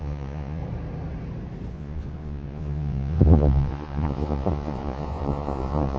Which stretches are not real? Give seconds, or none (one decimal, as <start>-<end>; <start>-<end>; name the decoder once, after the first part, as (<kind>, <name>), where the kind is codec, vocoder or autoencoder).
0.0-0.6 (vocoder, Vocos); 1.7-6.0

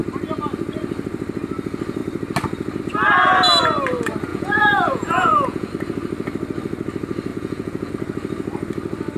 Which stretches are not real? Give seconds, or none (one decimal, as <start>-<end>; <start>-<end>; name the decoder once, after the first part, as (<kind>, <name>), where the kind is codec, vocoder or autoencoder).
4.3-5.7 (vocoder, Vocos); 7.3-7.9

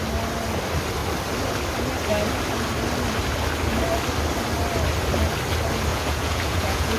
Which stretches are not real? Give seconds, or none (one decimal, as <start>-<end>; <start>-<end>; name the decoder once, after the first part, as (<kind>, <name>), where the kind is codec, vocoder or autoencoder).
5.9-7.0 (vocoder, Vocos)